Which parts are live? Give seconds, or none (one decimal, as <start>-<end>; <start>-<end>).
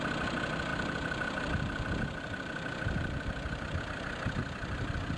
0.0-0.7; 3.8-5.2